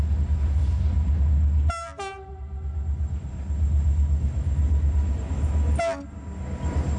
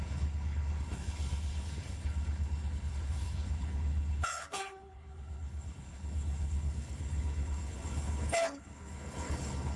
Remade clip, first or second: second